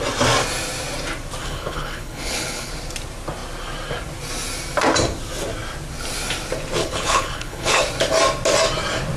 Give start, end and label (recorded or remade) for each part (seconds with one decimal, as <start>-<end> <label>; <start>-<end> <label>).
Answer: 0.0-1.4 recorded; 1.4-2.7 remade; 2.7-6.8 recorded; 6.8-7.8 remade; 7.8-9.2 recorded